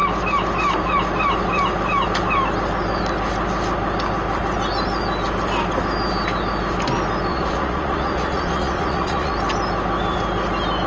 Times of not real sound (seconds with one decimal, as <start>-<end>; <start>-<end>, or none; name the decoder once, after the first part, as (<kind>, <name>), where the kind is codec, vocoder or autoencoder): 7.3-9.3 (vocoder, Vocos)